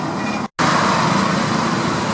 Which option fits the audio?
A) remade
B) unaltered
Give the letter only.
B